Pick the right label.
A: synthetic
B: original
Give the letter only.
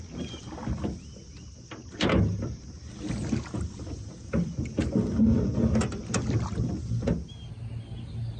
B